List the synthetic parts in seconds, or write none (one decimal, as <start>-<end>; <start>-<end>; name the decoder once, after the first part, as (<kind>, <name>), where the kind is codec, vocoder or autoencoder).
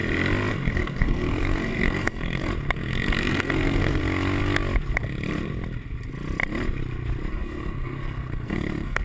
0.5-2.5 (codec, SNAC); 3.3-4.0; 7.3-9.0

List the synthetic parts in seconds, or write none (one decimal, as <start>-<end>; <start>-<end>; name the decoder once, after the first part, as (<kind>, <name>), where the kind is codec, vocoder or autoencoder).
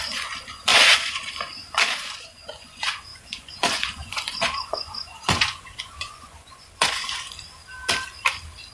0.0-7.6 (vocoder, Vocos)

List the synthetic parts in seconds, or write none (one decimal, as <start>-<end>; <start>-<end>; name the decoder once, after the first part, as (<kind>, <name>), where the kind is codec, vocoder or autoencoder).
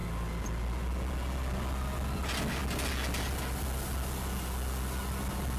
none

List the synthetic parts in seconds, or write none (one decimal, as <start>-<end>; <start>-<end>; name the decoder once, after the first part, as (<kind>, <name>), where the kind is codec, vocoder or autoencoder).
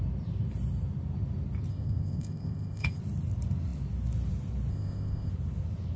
1.7-3.0 (codec, ZipCodec); 4.7-5.3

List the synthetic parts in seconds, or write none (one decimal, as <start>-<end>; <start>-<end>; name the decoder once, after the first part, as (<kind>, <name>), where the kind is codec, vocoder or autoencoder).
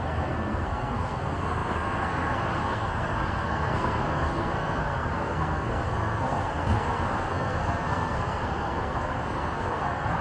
0.0-10.2 (codec, SNAC)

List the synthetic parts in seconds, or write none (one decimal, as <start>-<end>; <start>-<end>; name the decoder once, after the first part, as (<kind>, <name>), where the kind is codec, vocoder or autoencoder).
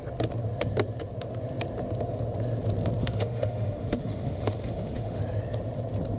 3.0-5.2 (autoencoder, DAC-VAE)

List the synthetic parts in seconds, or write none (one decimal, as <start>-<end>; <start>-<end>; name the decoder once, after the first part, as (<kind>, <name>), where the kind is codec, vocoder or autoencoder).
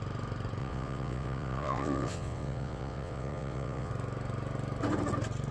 0.6-3.9 (vocoder, WaveNeXt)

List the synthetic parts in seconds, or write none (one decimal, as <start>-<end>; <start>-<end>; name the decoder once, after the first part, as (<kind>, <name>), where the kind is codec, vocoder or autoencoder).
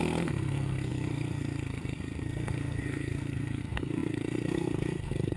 0.0-5.4 (codec, SNAC)